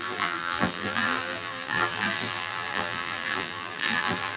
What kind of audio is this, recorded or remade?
remade